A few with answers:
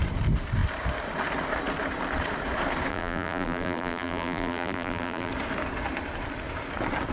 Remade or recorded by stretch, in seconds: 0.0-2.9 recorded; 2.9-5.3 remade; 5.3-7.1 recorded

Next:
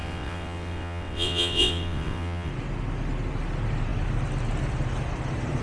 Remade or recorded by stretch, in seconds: 0.0-2.5 remade; 2.5-5.6 recorded

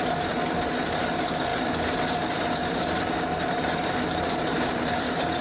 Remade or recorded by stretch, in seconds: 0.0-5.4 recorded

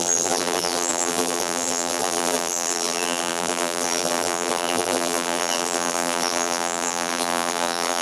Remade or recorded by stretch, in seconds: 0.0-8.0 remade

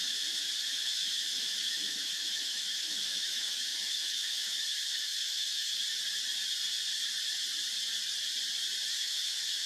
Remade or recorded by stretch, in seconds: 0.0-5.7 remade; 5.7-8.9 recorded; 8.9-9.7 remade